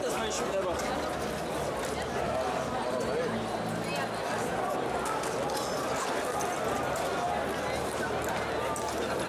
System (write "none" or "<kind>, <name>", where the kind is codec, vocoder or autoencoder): none